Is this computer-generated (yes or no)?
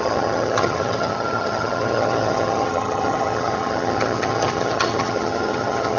yes